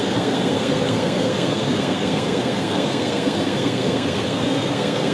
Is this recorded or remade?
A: remade